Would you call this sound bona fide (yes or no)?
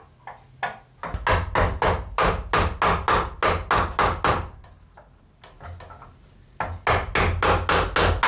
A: yes